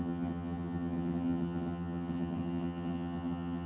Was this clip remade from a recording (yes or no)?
yes